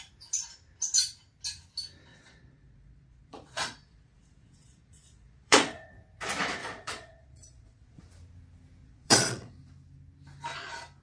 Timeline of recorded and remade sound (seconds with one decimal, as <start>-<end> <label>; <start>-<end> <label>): 0.0-2.1 recorded; 2.1-5.9 remade; 5.9-6.6 recorded; 6.6-8.0 remade; 8.0-8.8 recorded; 8.8-9.5 remade; 9.5-11.0 recorded